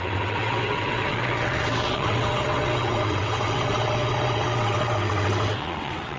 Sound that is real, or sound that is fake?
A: fake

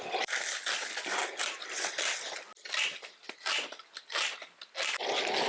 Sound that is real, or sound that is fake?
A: real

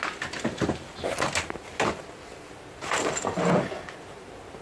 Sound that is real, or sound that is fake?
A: real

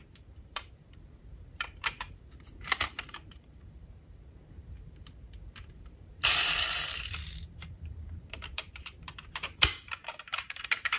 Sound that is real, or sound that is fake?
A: fake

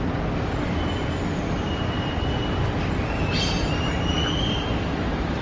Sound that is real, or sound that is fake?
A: real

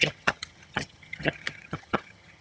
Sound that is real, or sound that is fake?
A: fake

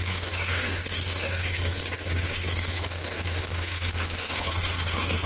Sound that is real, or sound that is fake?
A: fake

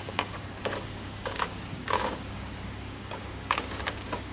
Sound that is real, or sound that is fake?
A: fake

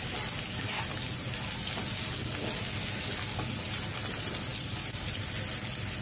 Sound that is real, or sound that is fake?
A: real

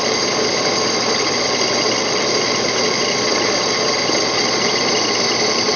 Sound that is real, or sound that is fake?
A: real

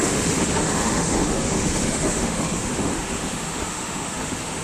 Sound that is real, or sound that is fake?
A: fake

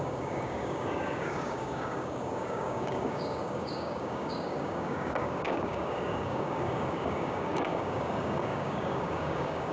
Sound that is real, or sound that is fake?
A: fake